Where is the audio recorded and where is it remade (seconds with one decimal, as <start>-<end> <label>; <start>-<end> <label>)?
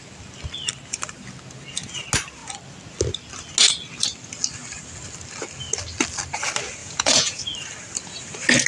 0.0-6.8 recorded; 6.8-7.4 remade; 7.4-8.7 recorded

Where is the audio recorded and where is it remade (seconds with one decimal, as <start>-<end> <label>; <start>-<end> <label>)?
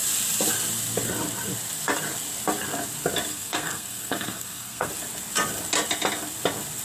0.0-3.3 recorded; 3.3-4.9 remade; 4.9-6.8 recorded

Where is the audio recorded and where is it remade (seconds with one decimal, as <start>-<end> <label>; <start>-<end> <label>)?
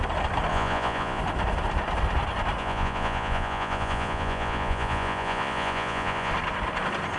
0.0-0.5 recorded; 0.5-1.2 remade; 1.2-2.6 recorded; 2.6-6.3 remade; 6.3-7.2 recorded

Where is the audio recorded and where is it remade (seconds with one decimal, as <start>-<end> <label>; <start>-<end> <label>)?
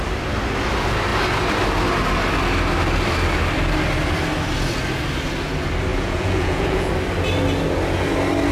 0.0-5.9 recorded; 5.9-6.9 remade; 6.9-8.5 recorded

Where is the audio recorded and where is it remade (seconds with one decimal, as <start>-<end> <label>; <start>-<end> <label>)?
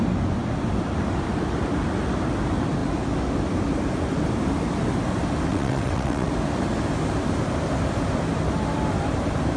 0.0-5.5 recorded; 5.5-6.3 remade; 6.3-9.6 recorded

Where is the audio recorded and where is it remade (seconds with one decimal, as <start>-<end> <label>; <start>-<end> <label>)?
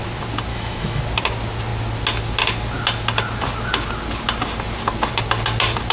0.0-0.5 recorded; 0.5-1.0 remade; 1.0-5.9 recorded